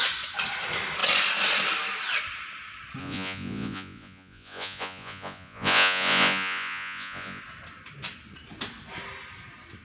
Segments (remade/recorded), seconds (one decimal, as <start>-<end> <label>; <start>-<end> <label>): 0.0-3.0 recorded; 3.0-7.4 remade; 7.4-9.8 recorded